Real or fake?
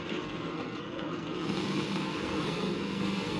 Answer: fake